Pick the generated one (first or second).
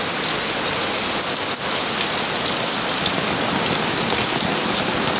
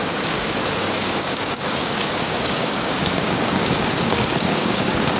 second